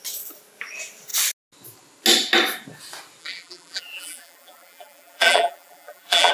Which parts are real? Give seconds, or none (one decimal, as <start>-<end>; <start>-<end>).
0.0-3.2